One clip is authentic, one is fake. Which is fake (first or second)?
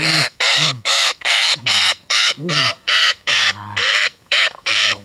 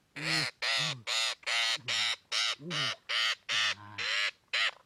first